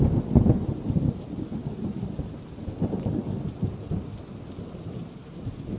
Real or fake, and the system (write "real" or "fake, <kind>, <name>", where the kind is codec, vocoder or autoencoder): real